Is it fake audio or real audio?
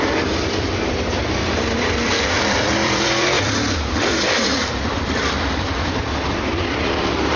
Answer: fake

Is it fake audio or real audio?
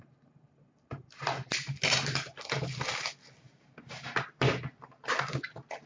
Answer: real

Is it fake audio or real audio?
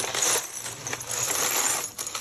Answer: fake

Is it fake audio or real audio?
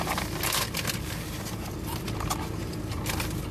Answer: real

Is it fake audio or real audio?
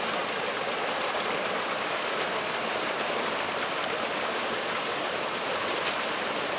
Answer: fake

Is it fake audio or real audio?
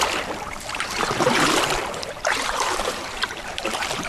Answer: fake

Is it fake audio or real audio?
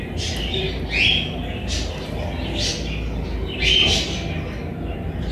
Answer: real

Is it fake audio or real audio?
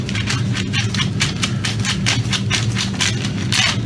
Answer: real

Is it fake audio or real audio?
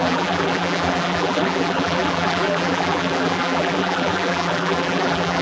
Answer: fake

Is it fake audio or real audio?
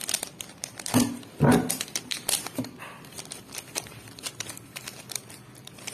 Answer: fake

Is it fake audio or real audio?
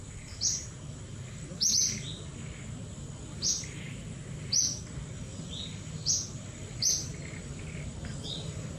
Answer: real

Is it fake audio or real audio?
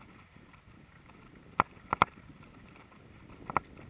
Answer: real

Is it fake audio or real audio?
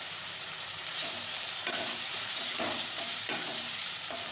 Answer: fake